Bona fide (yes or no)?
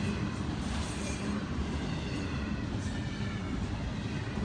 yes